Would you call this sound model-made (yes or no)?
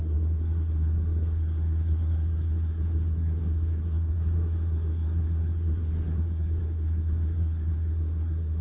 yes